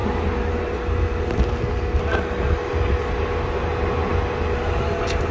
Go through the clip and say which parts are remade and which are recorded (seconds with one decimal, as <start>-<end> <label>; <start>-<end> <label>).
0.0-5.3 recorded